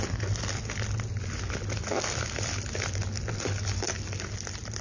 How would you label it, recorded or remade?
recorded